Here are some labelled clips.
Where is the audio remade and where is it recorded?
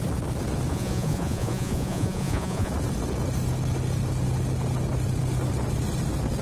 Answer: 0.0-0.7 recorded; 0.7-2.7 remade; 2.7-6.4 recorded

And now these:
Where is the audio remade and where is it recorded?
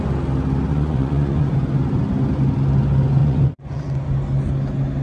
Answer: 0.0-0.7 recorded; 0.7-1.5 remade; 1.5-3.2 recorded; 3.2-3.8 remade; 3.8-5.0 recorded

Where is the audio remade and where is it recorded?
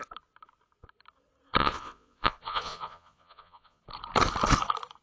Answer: 0.0-1.6 recorded; 1.6-3.8 remade; 3.8-5.0 recorded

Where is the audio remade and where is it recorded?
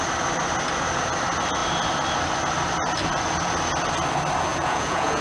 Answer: 0.0-4.5 recorded; 4.5-5.2 remade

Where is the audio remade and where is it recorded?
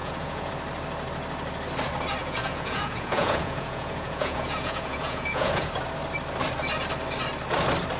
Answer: 0.0-0.5 remade; 0.5-2.2 recorded; 2.2-5.7 remade; 5.7-8.0 recorded